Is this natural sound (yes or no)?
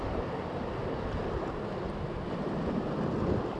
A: yes